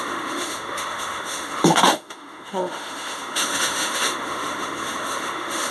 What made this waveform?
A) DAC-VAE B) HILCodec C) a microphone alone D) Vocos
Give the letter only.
A